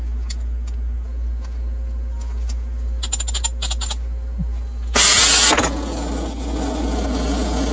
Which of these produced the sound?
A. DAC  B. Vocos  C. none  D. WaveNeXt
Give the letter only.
C